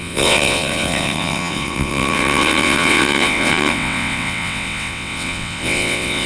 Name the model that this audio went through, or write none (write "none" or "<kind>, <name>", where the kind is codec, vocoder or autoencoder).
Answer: vocoder, WaveNeXt